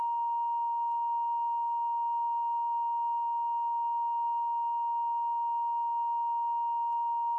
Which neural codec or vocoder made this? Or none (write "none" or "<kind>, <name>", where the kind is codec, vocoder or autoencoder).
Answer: codec, DAC